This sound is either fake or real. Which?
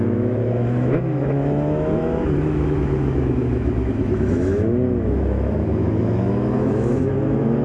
fake